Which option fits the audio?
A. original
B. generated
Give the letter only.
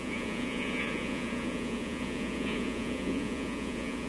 B